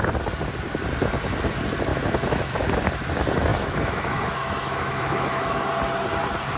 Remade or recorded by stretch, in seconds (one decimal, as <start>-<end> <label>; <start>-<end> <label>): 0.0-1.9 recorded; 1.9-2.6 remade; 2.6-3.5 recorded; 3.5-5.7 remade; 5.7-6.6 recorded